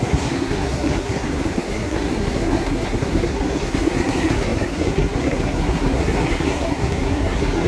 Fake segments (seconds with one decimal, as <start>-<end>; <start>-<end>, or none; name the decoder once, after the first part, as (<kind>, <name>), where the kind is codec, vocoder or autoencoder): 0.0-7.7 (codec, SNAC)